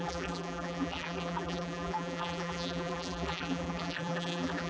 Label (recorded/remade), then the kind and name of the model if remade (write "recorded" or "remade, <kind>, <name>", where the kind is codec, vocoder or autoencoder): remade, vocoder, BigVGAN v2